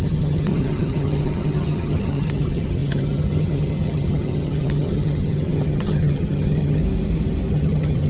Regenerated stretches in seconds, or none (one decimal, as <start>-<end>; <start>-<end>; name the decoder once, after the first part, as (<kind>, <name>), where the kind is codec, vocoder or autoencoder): 0.0-6.8 (vocoder, HiFi-GAN); 7.5-8.1